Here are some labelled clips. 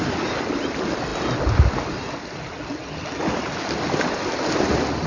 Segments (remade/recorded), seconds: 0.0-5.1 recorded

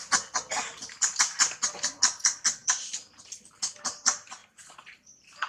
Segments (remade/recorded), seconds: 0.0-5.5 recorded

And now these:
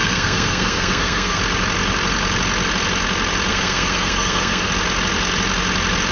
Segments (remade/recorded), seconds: 0.0-1.4 remade; 1.4-3.5 recorded; 3.5-4.7 remade; 4.7-6.1 recorded